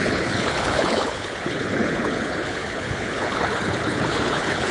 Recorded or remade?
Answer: remade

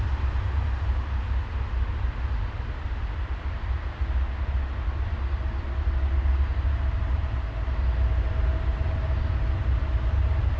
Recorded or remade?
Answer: recorded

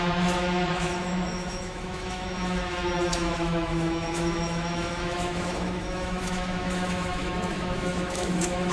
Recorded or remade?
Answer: remade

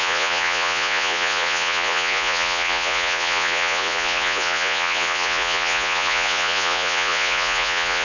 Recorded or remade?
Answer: remade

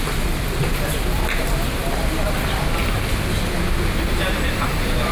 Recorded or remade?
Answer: recorded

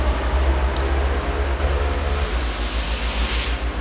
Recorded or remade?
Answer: recorded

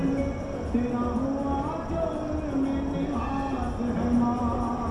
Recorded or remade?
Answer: recorded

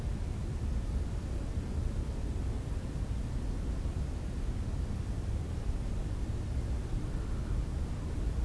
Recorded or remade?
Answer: recorded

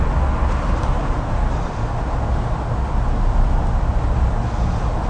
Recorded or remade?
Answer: recorded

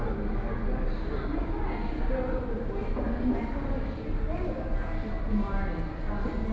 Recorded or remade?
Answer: recorded